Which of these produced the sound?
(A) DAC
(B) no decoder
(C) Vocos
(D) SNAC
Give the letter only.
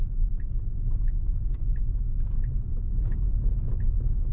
B